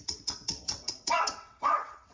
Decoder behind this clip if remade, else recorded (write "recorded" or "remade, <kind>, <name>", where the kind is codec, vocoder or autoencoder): remade, vocoder, WaveNeXt